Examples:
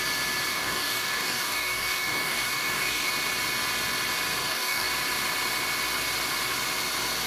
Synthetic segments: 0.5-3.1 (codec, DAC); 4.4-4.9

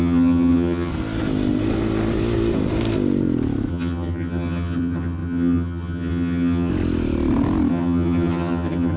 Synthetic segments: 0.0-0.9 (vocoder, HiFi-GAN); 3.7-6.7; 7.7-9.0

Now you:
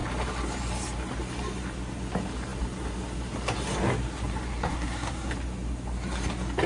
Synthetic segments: 4.7-5.3 (codec, SNAC)

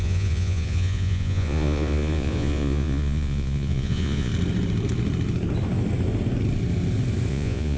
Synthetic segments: 0.0-4.3 (vocoder, Vocos); 7.3-7.8

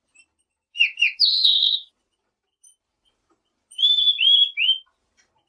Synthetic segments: 1.3-1.9 (codec, SNAC)